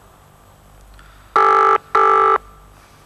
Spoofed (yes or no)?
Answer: no